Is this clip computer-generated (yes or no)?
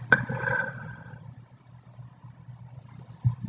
yes